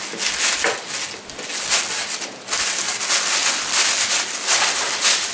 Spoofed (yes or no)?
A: no